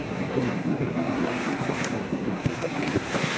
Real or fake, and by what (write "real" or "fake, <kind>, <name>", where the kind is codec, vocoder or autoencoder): fake, codec, SNAC